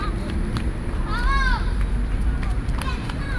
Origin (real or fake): real